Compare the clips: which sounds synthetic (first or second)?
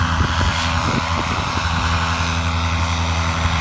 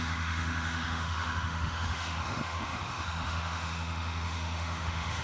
second